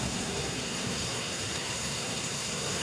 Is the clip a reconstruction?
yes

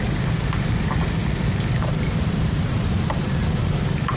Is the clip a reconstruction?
yes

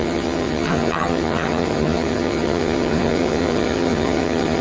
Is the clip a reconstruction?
yes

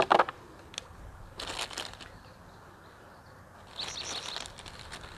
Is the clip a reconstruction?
no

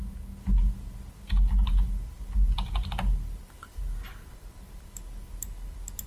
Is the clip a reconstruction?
no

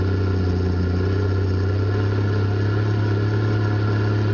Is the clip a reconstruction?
no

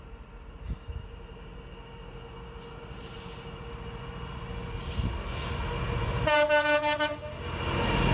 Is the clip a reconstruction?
no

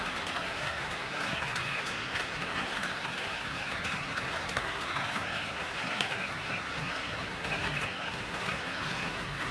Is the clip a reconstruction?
yes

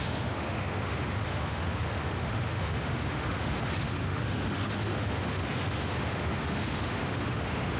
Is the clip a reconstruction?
yes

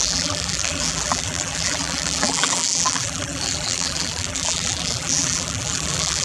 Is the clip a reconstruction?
yes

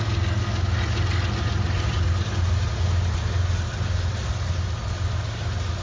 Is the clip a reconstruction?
no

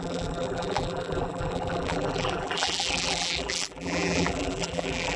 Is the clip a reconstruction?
yes